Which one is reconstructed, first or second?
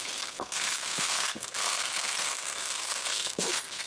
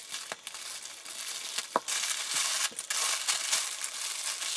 first